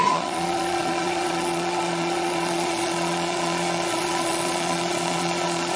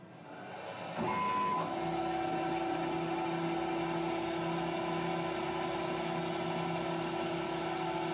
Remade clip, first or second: first